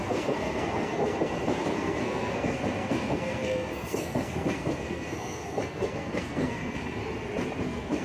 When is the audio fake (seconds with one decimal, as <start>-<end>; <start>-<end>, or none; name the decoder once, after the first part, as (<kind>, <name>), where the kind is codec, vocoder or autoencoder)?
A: 0.0-7.0 (codec, SNAC); 7.6-8.0